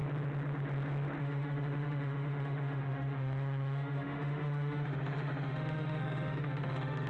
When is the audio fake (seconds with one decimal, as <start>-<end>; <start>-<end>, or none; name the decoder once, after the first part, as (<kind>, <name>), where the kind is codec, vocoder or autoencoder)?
1.2-7.1 (autoencoder, DAC-VAE)